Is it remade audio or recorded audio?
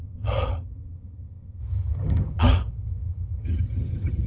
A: remade